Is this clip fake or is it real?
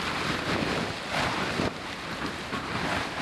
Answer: real